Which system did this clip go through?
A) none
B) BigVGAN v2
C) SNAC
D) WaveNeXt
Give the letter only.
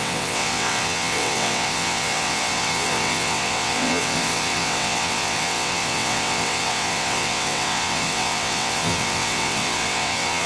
D